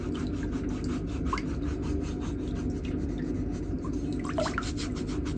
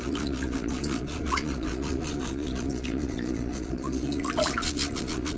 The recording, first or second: first